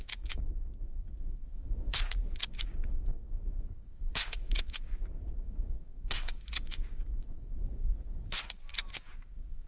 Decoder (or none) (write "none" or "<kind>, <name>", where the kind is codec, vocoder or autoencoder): codec, DAC